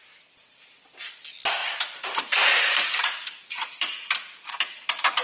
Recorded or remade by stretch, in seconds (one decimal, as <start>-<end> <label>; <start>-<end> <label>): 0.0-1.6 recorded; 1.6-4.6 remade; 4.6-5.2 recorded